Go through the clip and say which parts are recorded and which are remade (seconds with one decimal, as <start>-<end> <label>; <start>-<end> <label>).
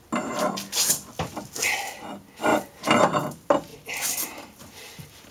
0.0-2.5 recorded; 2.5-3.0 remade; 3.0-5.3 recorded